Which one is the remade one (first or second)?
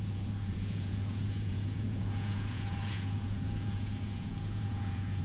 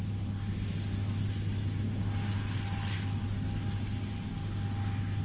first